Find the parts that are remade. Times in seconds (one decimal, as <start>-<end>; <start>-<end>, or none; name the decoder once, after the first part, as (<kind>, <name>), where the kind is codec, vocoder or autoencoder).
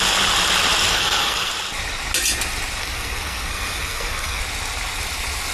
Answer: 0.9-1.5 (codec, SNAC); 2.8-4.4